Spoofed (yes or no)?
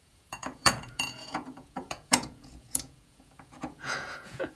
yes